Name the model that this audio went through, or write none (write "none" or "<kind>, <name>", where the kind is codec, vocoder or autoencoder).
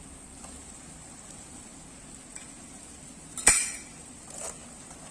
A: none